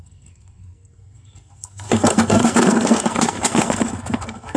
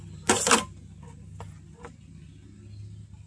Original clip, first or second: second